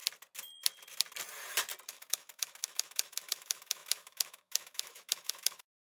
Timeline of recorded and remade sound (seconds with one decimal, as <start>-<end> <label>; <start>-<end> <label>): 0.0-1.9 recorded; 1.9-5.9 remade

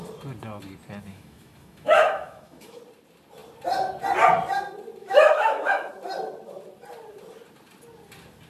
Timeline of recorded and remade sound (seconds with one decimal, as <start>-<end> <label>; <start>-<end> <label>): 0.0-1.1 recorded; 1.1-2.8 remade; 2.8-5.0 recorded; 5.0-5.9 remade; 5.9-8.5 recorded

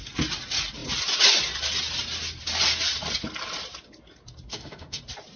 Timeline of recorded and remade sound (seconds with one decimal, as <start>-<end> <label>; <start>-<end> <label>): 0.0-4.5 recorded; 4.5-5.0 remade; 5.0-5.4 recorded

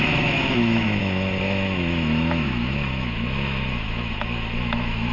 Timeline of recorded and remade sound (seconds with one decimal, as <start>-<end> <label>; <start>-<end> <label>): 0.0-5.1 remade